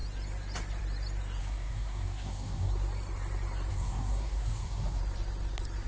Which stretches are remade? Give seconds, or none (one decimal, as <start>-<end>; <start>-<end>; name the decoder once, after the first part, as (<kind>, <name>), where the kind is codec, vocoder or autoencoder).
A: 1.4-2.7 (codec, SNAC); 3.7-5.0

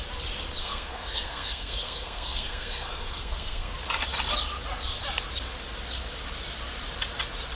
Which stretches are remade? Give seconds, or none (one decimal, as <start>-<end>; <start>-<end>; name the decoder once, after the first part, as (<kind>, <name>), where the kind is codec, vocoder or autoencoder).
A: 0.6-3.7 (codec, SNAC)